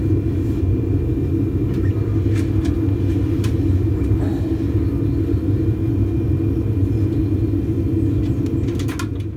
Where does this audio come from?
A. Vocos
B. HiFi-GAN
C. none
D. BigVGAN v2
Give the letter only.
C